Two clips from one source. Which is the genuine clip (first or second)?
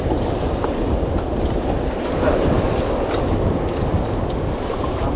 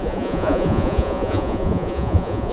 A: first